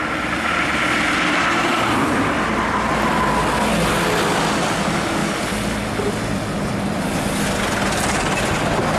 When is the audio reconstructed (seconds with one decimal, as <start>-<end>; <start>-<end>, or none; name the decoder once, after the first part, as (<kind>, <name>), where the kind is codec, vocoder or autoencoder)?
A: none